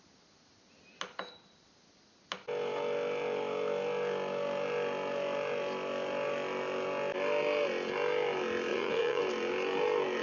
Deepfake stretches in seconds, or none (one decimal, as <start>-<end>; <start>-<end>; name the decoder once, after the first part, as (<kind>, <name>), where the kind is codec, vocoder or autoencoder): 8.7-9.2 (vocoder, Vocos)